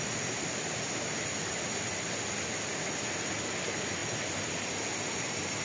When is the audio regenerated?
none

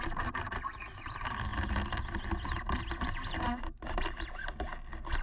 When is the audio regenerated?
none

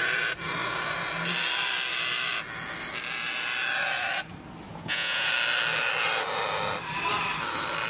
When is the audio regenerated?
4.7-5.3 (vocoder, Vocos)

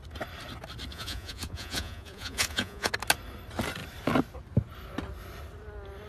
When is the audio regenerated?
0.9-2.9 (vocoder, Vocos)

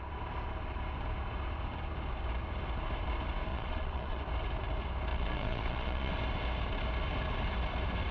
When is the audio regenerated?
3.5-4.2 (vocoder, Vocos); 5.1-6.1

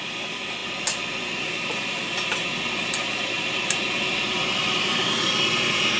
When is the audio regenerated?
none

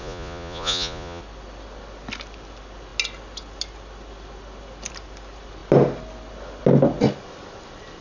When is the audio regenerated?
0.0-1.2 (vocoder, Vocos)